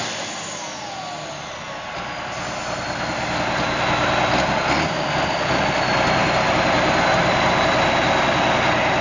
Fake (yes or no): no